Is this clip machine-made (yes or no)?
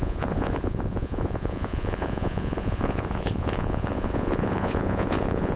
yes